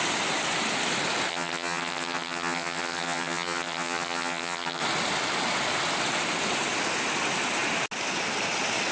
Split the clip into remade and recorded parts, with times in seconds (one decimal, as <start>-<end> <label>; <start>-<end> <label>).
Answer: 0.0-1.3 recorded; 1.3-4.8 remade; 4.8-8.9 recorded